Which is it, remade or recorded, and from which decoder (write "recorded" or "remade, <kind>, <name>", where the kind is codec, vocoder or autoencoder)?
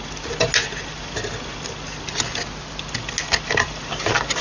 recorded